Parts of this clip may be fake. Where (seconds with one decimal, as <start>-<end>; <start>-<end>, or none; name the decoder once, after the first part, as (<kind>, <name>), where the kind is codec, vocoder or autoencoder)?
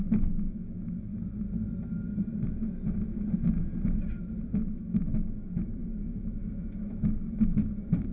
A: 0.0-1.1 (autoencoder, DAC-VAE); 4.6-8.1